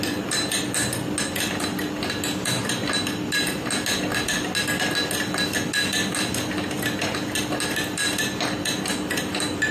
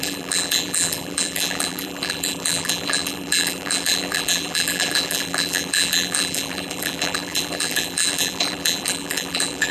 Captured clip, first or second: first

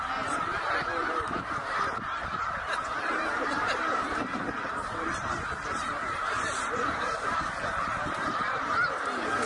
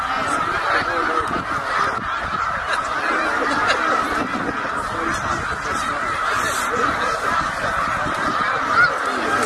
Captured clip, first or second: second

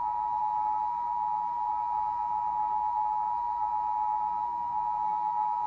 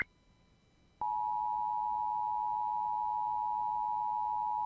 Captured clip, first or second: second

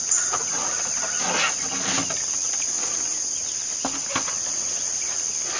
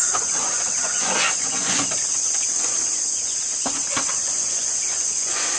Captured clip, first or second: first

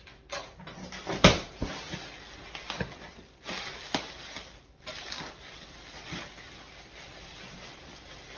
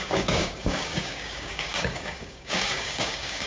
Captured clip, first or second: first